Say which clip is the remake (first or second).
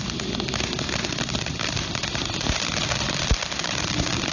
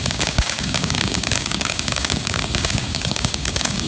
second